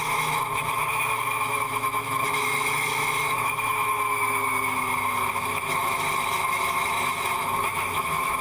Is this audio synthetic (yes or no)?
yes